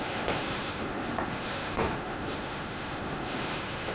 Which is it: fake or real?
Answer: fake